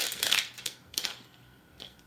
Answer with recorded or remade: remade